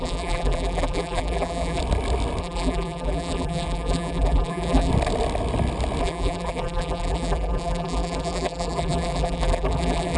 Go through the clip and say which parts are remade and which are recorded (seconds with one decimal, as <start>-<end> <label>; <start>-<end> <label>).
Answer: 0.0-1.8 remade; 1.8-2.4 recorded; 2.4-4.9 remade; 4.9-6.0 recorded; 6.0-10.2 remade